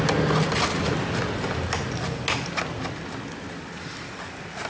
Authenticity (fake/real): real